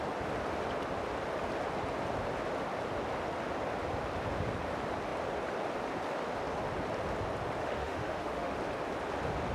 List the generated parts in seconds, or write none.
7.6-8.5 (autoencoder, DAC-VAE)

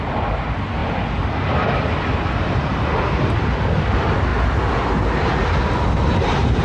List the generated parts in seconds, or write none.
none

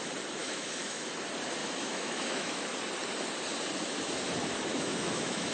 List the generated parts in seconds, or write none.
0.4-1.1 (autoencoder, DAC-VAE); 1.6-2.6; 4.7-5.5

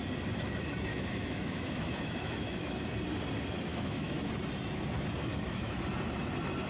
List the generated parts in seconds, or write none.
0.9-2.8 (autoencoder, DAC-VAE); 3.7-4.3; 5.3-5.8

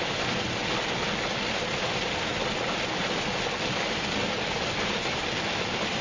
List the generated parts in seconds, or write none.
none

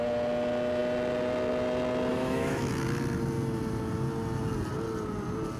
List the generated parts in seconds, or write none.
2.1-2.7 (autoencoder, DAC-VAE)

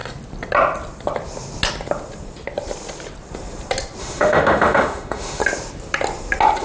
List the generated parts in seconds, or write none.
4.0-5.4 (autoencoder, DAC-VAE)

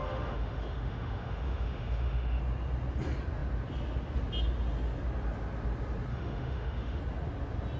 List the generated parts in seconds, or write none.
0.0-2.4 (autoencoder, DAC-VAE); 6.1-7.0